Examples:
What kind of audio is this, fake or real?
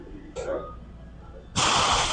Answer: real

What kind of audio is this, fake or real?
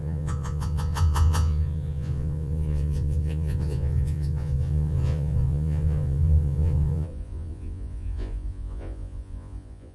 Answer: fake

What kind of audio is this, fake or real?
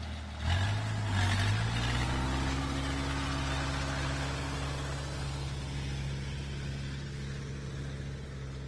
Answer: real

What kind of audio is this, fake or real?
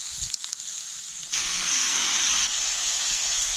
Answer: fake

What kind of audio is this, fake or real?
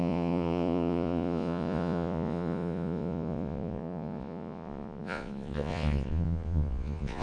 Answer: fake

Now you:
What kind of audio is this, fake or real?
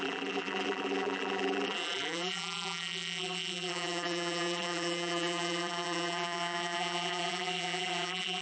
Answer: fake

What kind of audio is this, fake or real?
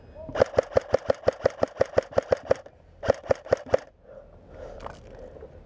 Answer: real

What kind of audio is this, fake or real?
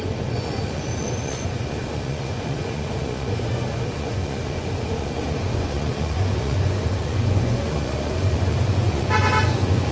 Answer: fake